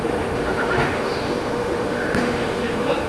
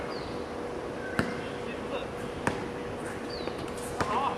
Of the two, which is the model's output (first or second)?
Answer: first